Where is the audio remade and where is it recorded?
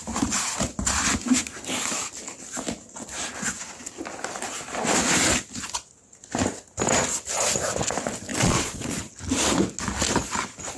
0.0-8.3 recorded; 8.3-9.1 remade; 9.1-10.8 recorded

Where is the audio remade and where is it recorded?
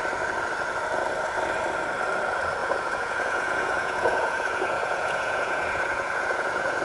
0.0-2.6 recorded; 2.6-6.8 remade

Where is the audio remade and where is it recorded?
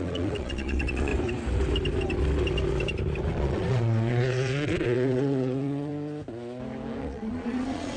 0.0-1.1 remade; 1.1-3.3 recorded; 3.3-5.9 remade; 5.9-7.0 recorded; 7.0-8.0 remade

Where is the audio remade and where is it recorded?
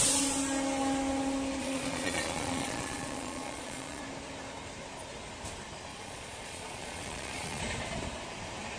0.0-1.6 recorded; 1.6-4.0 remade; 4.0-5.9 recorded; 5.9-7.6 remade; 7.6-8.8 recorded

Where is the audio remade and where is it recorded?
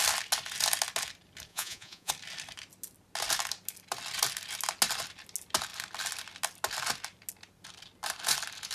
0.0-1.5 recorded; 1.5-2.1 remade; 2.1-8.7 recorded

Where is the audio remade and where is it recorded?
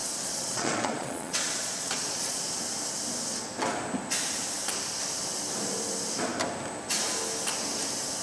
0.0-2.4 remade; 2.4-8.2 recorded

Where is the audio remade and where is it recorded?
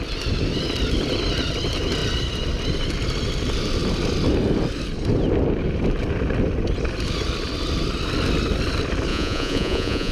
0.0-9.1 recorded; 9.1-10.1 remade